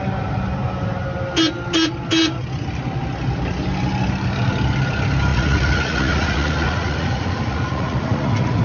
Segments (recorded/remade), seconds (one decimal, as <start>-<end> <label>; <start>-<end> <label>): 0.0-5.3 recorded; 5.3-8.6 remade